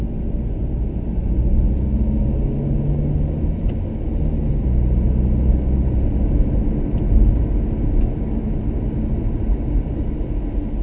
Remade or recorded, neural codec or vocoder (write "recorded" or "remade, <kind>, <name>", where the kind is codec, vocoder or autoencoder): recorded